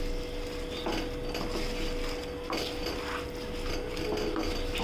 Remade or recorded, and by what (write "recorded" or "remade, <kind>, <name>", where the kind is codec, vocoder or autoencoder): recorded